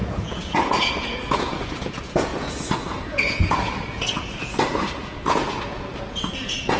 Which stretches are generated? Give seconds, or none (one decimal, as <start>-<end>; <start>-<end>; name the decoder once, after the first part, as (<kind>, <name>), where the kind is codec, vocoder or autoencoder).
0.0-6.8 (vocoder, Vocos)